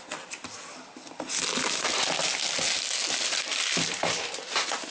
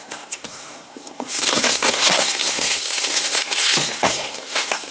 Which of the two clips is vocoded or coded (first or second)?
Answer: second